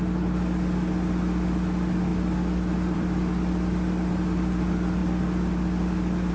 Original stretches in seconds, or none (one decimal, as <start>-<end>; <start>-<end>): 0.0-2.1; 4.5-5.0